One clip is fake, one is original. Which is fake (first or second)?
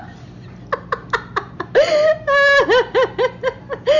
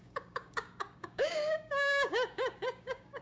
second